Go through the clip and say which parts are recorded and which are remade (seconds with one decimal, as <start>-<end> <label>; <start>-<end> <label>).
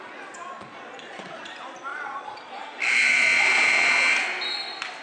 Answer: 0.0-0.6 recorded; 0.6-1.4 remade; 1.4-1.9 recorded; 1.9-2.5 remade; 2.5-3.0 recorded; 3.0-4.1 remade; 4.1-5.0 recorded